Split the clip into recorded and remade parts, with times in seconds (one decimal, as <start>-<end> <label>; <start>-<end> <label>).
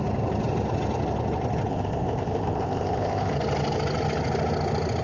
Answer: 0.0-1.7 recorded; 1.7-3.3 remade; 3.3-5.0 recorded